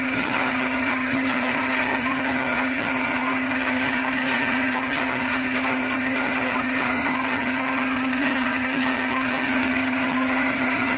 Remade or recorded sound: remade